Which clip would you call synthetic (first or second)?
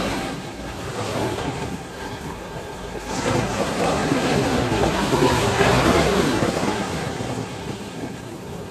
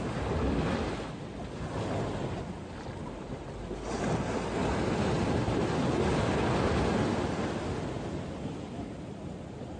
first